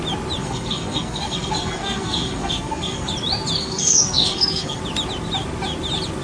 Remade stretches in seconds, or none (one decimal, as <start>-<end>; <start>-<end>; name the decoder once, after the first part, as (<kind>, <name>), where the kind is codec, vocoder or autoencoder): 0.4-3.1 (codec, SNAC); 3.6-4.8